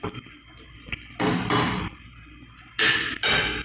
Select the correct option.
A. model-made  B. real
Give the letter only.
B